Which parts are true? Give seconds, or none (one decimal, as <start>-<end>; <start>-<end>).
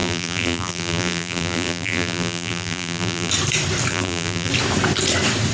3.3-3.9; 4.5-5.5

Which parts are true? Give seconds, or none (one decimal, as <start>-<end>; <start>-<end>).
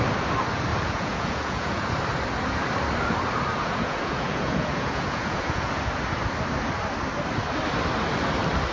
0.0-0.7; 1.9-3.5; 5.9-8.7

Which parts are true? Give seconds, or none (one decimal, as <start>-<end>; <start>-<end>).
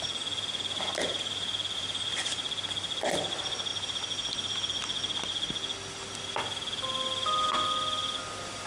0.0-8.7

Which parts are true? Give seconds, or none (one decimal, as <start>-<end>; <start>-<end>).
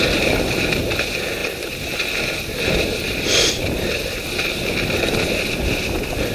0.0-1.4; 4.2-6.3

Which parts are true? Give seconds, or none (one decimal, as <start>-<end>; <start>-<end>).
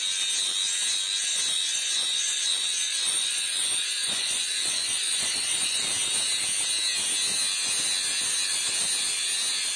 0.0-1.3; 5.8-9.8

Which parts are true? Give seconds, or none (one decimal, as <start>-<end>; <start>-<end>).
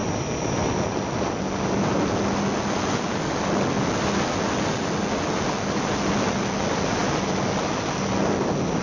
0.0-8.8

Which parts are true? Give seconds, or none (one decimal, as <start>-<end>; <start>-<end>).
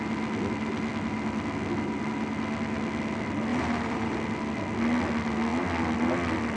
0.0-3.5; 4.2-6.6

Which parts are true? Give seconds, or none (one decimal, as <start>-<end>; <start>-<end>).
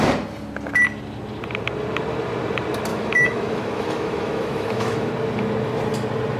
0.0-2.9; 5.1-6.4